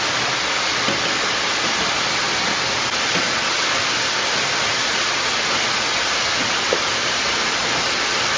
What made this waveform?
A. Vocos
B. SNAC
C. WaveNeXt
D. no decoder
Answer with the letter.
D